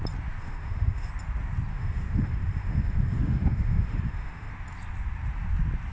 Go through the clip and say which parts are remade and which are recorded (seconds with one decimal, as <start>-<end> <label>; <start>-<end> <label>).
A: 0.0-0.4 recorded; 0.4-1.1 remade; 1.1-1.7 recorded; 1.7-4.5 remade; 4.5-5.9 recorded